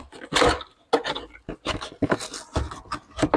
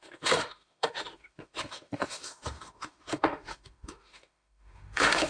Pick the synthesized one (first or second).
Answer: second